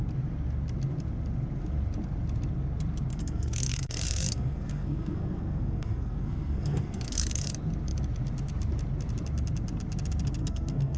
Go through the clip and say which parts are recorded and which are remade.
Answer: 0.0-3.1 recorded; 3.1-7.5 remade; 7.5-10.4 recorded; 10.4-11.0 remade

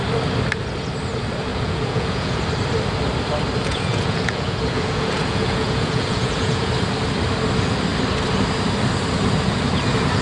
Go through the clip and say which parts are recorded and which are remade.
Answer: 0.0-1.5 recorded; 1.5-2.4 remade; 2.4-3.7 recorded; 3.7-6.7 remade; 6.7-10.2 recorded